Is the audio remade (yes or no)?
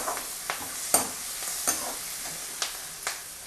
no